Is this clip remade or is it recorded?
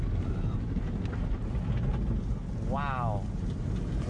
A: recorded